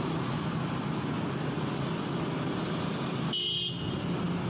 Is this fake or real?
real